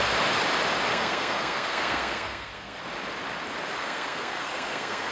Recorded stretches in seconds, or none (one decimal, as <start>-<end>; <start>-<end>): 0.0-0.9; 2.8-3.8